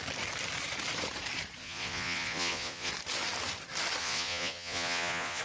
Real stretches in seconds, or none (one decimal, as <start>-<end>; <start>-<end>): 0.0-1.6; 2.9-4.0